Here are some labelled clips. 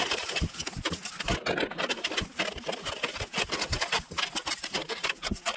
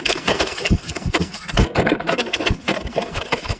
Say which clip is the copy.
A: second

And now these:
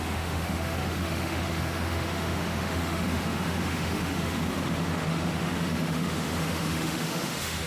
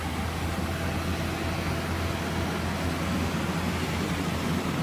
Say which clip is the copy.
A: first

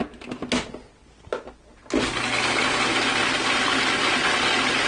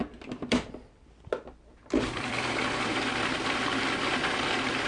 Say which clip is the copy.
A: second